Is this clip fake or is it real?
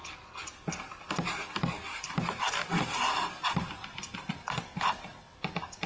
real